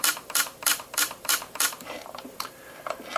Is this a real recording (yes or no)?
no